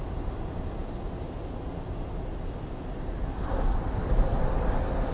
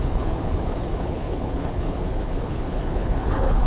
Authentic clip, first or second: first